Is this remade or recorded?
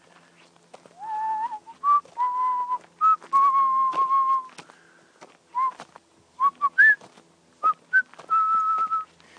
recorded